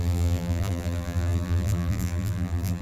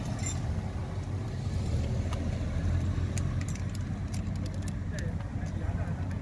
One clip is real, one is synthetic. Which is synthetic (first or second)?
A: first